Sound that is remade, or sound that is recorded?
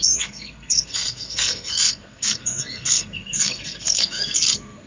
remade